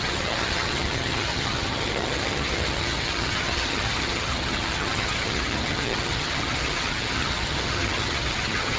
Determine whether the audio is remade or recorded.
remade